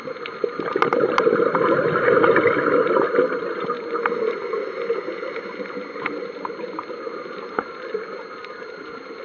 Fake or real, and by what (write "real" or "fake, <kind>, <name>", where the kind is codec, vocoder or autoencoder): real